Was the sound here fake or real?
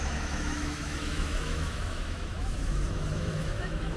fake